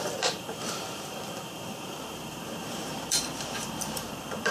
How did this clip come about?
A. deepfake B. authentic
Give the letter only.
A